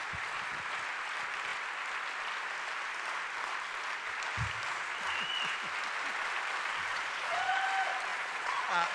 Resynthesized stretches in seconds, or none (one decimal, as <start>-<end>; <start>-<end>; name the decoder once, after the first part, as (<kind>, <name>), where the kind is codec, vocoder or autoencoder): 6.9-7.6 (vocoder, Vocos); 8.1-8.9